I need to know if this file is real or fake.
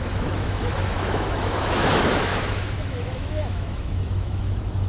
fake